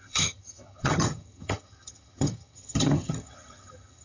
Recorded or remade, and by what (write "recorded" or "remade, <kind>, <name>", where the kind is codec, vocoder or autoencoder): remade, vocoder, HiFi-GAN